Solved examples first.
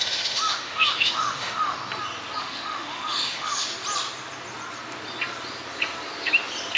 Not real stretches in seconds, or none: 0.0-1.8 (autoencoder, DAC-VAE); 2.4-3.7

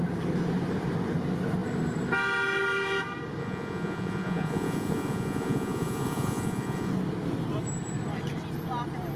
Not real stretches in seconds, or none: 3.4-6.9 (vocoder, Vocos)